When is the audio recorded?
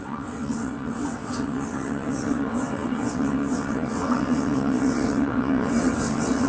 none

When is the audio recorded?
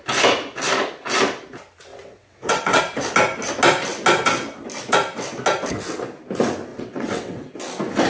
0.0-1.9; 2.8-6.7; 7.5-8.1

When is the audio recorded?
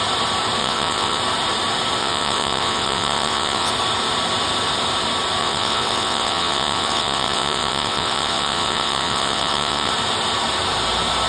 0.0-0.6; 1.2-2.0; 3.7-5.4; 9.9-11.3